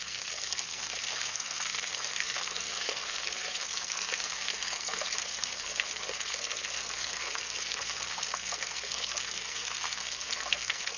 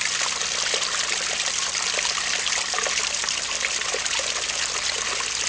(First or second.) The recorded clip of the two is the second